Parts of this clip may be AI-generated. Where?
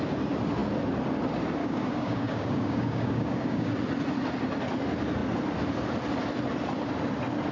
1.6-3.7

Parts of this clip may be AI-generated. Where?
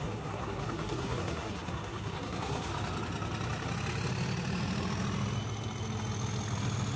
0.0-2.7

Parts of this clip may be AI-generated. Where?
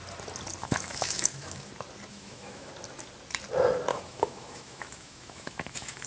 0.6-1.7; 2.1-2.7; 3.9-6.1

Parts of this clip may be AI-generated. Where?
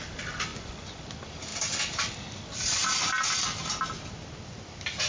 0.5-1.0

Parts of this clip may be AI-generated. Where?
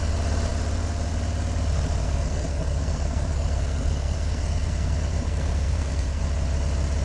2.0-6.2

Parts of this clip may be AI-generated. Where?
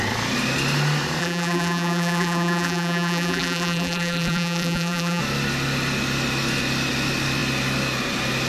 1.2-5.2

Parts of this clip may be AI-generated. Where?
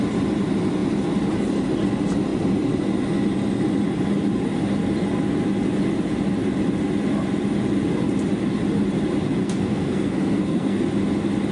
9.4-10.8